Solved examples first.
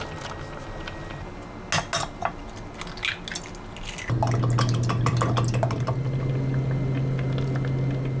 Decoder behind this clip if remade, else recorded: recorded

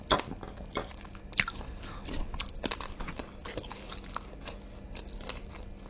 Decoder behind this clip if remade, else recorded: recorded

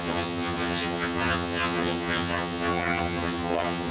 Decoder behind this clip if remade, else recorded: remade, vocoder, HiFi-GAN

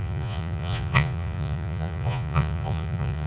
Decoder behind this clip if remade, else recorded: remade, vocoder, Vocos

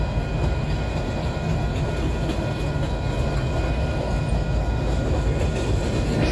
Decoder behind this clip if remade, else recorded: recorded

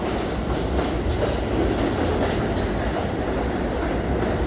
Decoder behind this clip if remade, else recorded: recorded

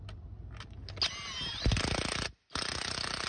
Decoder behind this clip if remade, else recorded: recorded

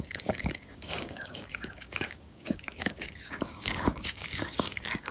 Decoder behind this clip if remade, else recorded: remade, codec, DAC